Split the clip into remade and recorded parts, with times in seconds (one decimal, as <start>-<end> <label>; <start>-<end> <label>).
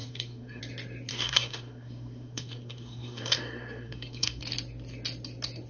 0.0-0.6 remade; 0.6-1.1 recorded; 1.1-4.4 remade; 4.4-5.7 recorded